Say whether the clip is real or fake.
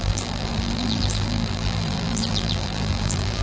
fake